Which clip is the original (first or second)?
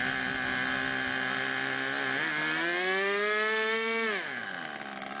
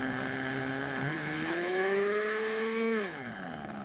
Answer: first